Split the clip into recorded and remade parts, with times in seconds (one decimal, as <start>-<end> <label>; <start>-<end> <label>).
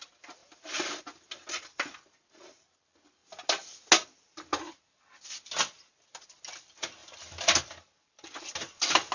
0.0-9.1 recorded